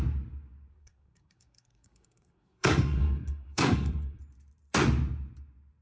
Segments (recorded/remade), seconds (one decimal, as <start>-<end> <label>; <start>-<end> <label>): 0.0-0.7 recorded; 0.7-4.2 remade; 4.2-5.8 recorded